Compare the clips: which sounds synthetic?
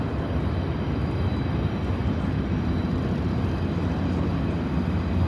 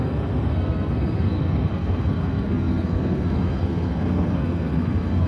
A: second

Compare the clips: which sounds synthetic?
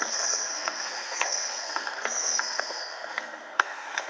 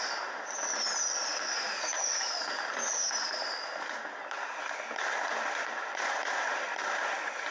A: first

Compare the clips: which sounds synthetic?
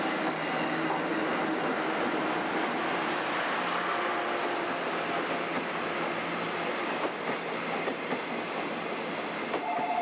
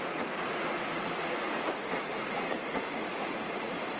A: second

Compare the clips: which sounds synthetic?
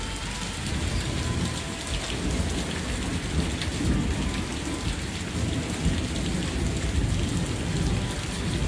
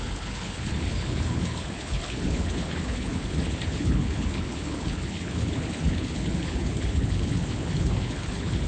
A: second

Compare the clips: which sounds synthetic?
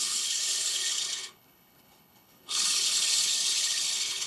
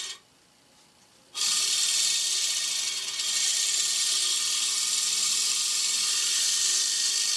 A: first